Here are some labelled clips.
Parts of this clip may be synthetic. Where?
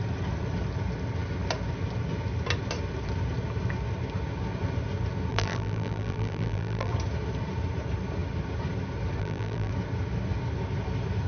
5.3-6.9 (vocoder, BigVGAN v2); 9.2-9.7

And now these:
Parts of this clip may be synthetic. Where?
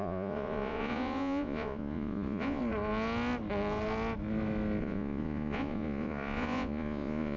0.0-2.6 (vocoder, Vocos); 4.8-7.4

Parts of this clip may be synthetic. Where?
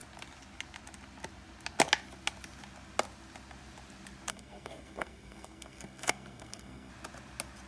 4.3-6.9 (codec, SNAC)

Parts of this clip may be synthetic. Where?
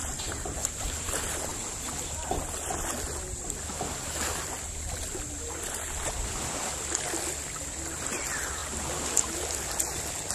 0.0-1.1 (vocoder, BigVGAN v2)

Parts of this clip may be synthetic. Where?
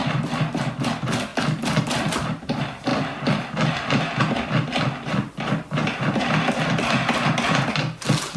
none